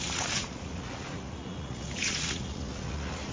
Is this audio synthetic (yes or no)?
yes